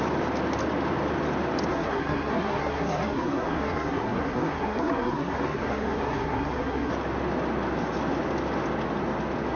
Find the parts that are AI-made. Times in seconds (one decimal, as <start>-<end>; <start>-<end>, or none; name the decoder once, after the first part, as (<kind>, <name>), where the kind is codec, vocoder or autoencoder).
1.7-6.9 (codec, SNAC)